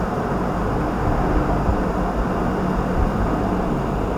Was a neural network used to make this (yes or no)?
no